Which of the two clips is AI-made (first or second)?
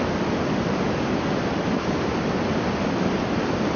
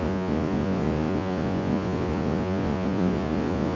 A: second